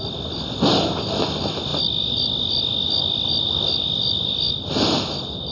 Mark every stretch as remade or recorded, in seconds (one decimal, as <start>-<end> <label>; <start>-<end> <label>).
0.0-5.5 recorded